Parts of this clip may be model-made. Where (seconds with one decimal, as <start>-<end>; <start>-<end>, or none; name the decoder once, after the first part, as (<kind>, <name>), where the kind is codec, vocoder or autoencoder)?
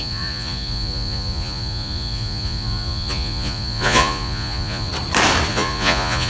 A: 0.0-4.9 (vocoder, Vocos); 5.5-6.3